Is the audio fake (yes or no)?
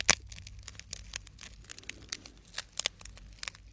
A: no